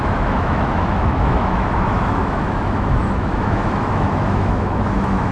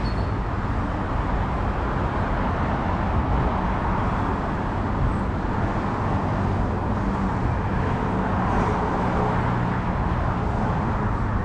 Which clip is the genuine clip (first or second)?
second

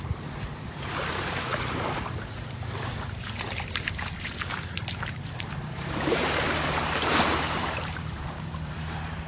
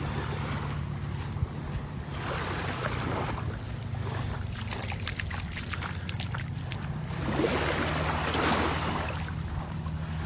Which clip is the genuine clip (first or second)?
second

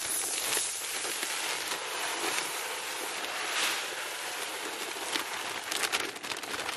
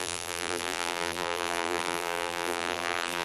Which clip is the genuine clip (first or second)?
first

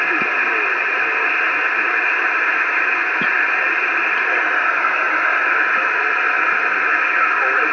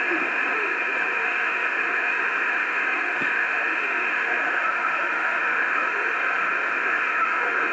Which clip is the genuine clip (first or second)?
first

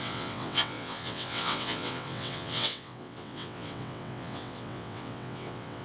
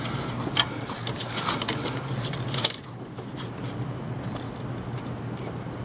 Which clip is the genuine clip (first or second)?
second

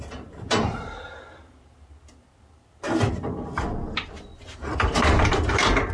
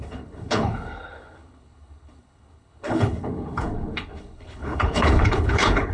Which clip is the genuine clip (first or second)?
first